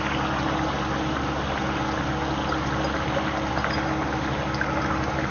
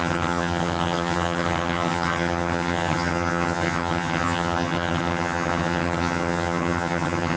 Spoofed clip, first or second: second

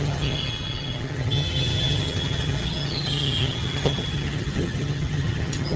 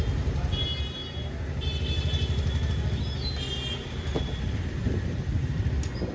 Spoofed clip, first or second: first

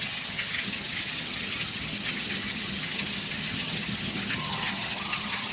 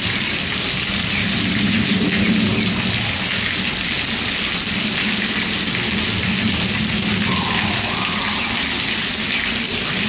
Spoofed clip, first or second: first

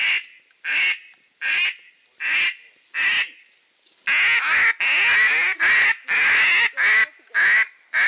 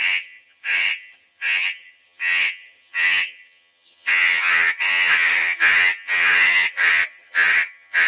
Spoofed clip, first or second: second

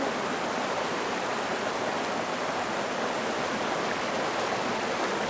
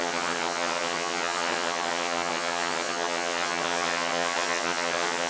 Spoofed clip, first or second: second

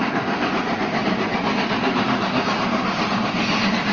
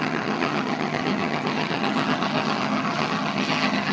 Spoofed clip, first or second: second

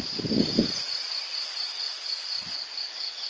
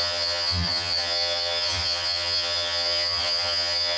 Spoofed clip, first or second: second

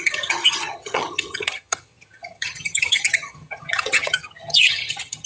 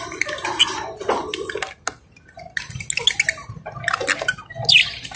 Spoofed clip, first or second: first